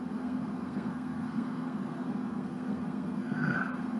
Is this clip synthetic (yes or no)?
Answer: yes